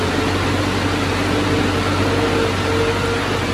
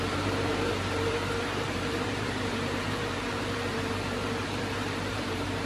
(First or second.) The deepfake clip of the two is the second